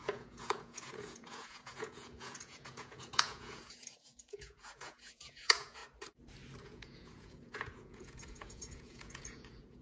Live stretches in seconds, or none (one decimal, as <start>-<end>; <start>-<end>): 5.8-6.6